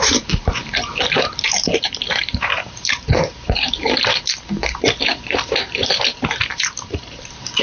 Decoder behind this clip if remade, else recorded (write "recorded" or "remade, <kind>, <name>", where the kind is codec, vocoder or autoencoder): remade, vocoder, BigVGAN v2